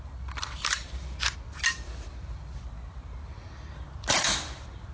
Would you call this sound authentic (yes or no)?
yes